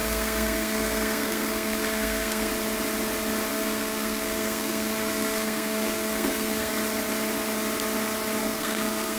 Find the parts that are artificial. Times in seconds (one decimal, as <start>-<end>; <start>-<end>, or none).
0.0-2.5; 3.5-6.7; 8.4-9.2